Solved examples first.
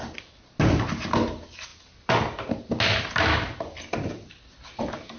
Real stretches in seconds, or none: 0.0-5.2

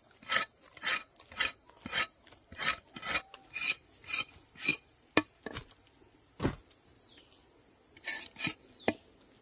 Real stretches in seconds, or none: 0.0-9.4

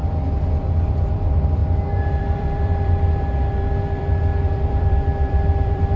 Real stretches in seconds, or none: 0.0-0.9; 1.6-2.1

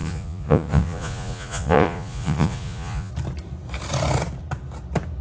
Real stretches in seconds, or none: 3.1-5.2

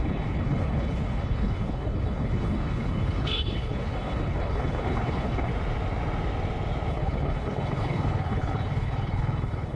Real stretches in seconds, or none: 5.5-6.9

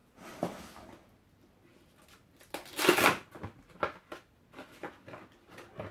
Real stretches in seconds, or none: 0.0-5.9

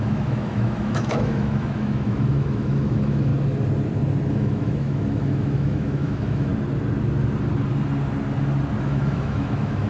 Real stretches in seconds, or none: 3.3-4.3; 6.5-8.8